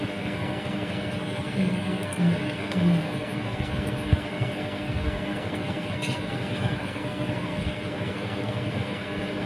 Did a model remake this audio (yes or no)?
yes